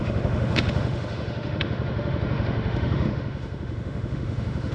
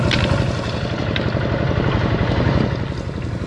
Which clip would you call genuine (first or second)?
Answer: second